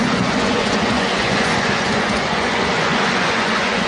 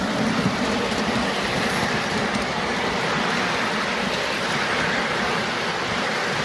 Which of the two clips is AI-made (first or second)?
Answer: first